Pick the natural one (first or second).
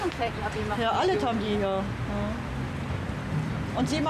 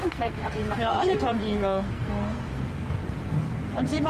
first